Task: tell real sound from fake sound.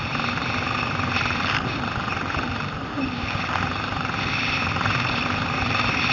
real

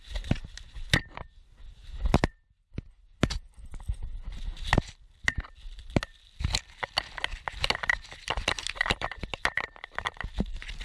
real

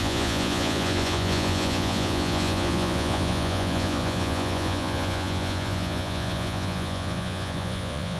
fake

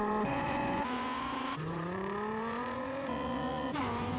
fake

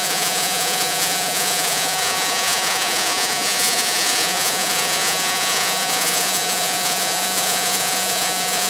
fake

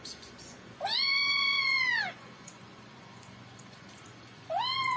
fake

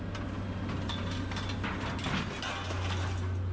real